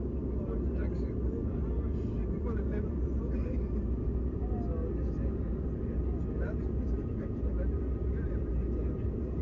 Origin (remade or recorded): recorded